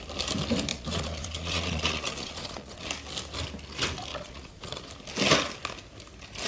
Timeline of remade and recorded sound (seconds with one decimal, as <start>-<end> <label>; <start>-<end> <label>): 0.0-0.7 recorded; 0.7-2.9 remade; 2.9-4.1 recorded; 4.1-4.9 remade; 4.9-6.5 recorded